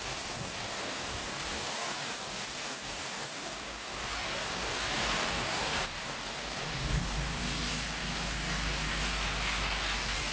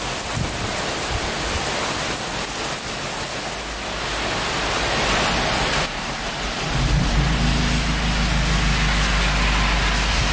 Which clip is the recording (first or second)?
second